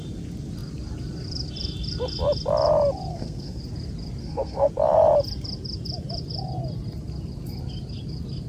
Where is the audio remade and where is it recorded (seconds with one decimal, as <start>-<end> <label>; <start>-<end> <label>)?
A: 0.0-3.1 recorded; 3.1-3.6 remade; 3.6-4.2 recorded; 4.2-4.7 remade; 4.7-8.5 recorded